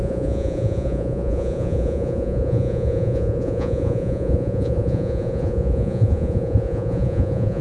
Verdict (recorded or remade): remade